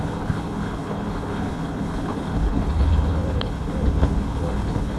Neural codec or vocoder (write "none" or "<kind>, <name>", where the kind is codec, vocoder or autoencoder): codec, HILCodec